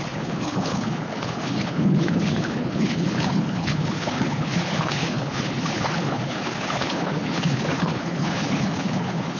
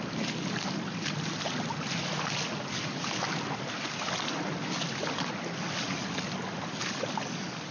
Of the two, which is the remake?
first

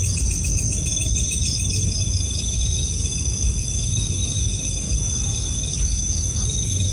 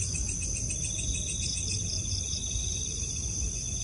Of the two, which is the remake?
first